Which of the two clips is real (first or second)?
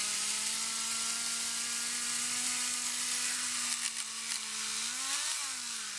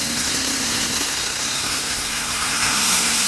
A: first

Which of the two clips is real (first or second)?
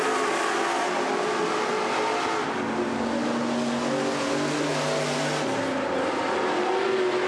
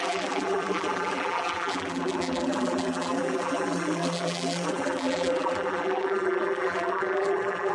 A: first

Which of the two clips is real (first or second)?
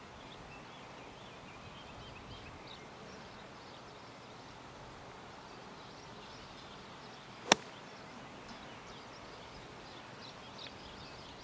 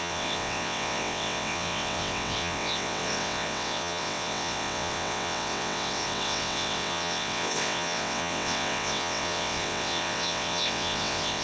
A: first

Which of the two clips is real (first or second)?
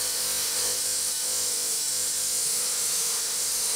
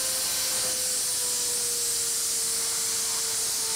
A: second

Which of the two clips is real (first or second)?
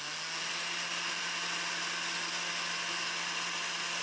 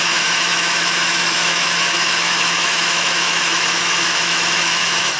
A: first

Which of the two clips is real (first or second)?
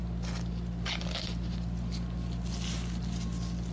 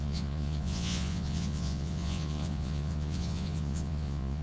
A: first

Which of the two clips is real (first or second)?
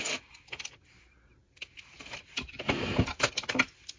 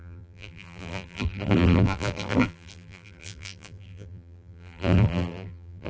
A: first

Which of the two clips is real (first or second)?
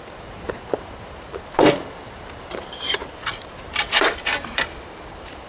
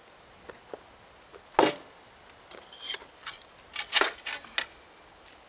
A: second